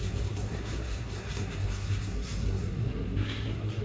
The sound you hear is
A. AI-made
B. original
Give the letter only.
A